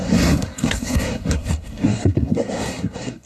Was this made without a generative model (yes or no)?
no